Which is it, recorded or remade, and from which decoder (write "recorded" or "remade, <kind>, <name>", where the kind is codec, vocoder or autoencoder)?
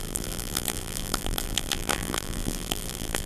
remade, vocoder, BigVGAN v2